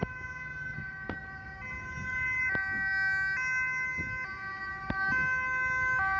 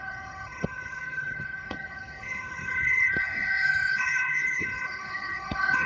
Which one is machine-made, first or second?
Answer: second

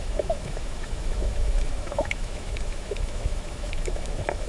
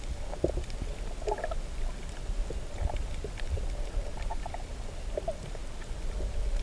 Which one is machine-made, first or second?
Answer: first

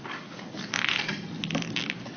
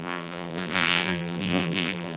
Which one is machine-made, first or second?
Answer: second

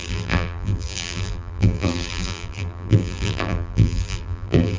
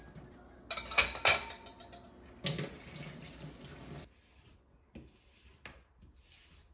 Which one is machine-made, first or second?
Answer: first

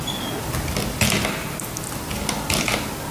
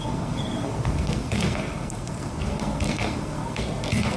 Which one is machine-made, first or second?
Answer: second